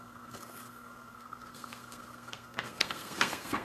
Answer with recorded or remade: remade